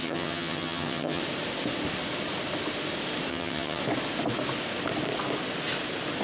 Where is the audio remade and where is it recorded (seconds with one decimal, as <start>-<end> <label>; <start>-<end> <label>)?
0.0-1.2 remade; 1.2-3.3 recorded; 3.3-3.8 remade; 3.8-6.2 recorded